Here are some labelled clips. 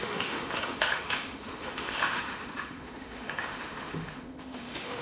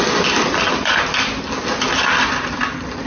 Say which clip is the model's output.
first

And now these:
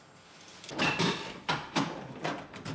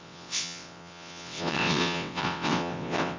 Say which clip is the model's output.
second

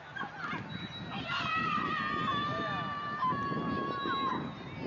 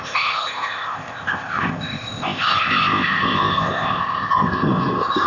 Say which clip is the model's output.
second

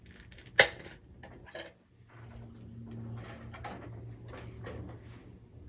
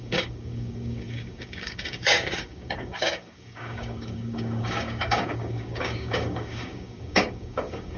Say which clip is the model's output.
second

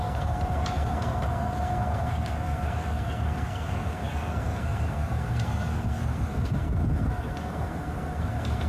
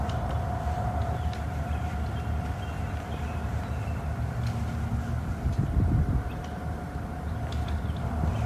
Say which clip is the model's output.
first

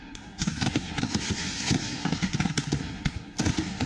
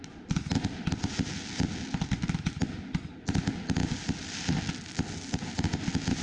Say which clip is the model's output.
first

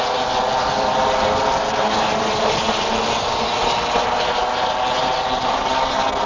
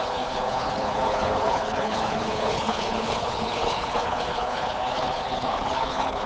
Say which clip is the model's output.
second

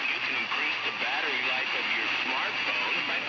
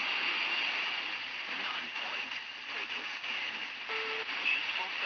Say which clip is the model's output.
second